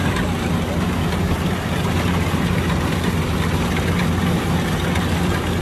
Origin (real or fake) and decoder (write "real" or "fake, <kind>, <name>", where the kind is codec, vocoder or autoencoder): real